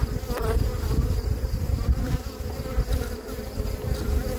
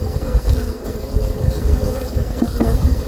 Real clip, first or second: first